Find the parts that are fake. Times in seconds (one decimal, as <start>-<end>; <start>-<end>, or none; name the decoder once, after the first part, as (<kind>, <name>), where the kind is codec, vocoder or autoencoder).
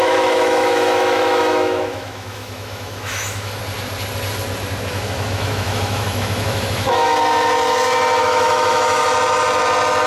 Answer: 0.0-3.6 (autoencoder, DAC-VAE); 4.9-7.1; 8.2-9.0